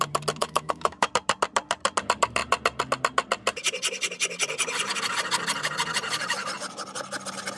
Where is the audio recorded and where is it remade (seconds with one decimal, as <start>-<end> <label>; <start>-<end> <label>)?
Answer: 0.0-0.4 recorded; 0.4-1.1 remade; 1.1-7.6 recorded